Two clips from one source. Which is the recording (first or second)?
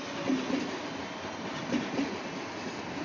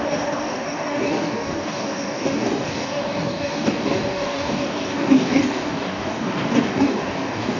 first